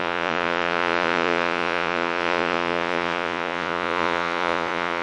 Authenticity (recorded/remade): remade